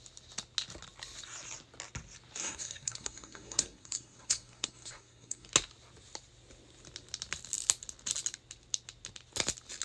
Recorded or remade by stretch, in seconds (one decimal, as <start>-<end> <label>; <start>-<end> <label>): 0.0-2.4 recorded; 2.4-5.5 remade; 5.5-9.8 recorded